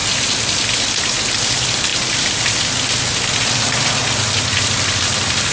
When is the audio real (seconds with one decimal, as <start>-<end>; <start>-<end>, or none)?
0.0-5.5